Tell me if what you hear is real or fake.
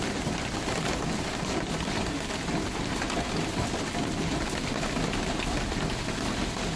real